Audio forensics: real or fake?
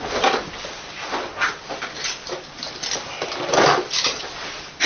real